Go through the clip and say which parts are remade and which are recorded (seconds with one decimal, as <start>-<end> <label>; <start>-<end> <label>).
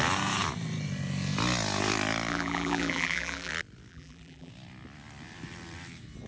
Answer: 0.0-2.3 recorded; 2.3-3.5 remade; 3.5-3.9 recorded; 3.9-4.5 remade; 4.5-6.3 recorded